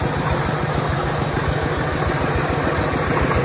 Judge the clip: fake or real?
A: real